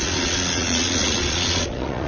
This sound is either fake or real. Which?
fake